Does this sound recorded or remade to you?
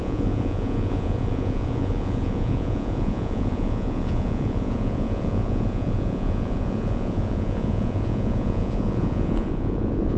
remade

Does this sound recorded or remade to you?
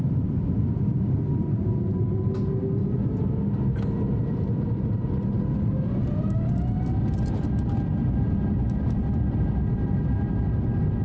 recorded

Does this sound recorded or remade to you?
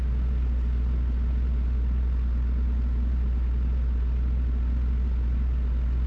recorded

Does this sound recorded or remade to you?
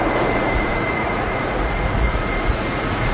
remade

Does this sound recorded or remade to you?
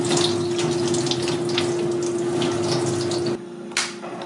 recorded